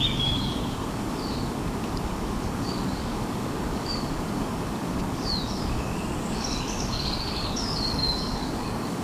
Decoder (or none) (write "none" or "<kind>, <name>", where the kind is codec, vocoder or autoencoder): codec, DAC